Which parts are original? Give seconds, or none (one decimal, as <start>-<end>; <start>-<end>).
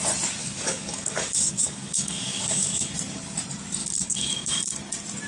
0.0-0.4; 2.9-3.8; 4.7-5.3